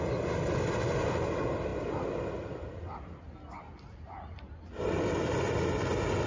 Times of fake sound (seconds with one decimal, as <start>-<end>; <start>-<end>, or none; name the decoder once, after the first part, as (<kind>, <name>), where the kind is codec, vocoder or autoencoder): none